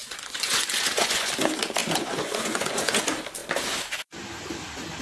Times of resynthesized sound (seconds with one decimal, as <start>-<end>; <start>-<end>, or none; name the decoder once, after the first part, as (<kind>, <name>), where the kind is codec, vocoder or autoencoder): 0.0-1.3 (vocoder, Vocos); 1.8-3.0